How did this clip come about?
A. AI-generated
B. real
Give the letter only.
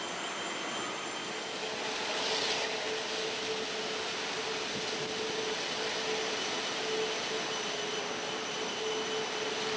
B